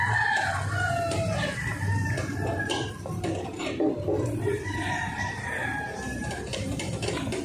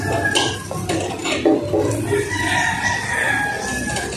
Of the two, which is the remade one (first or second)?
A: first